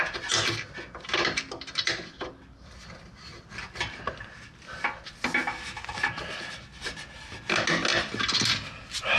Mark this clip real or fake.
real